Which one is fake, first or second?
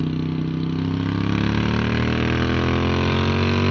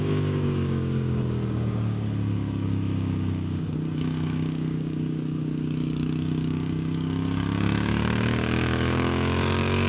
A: second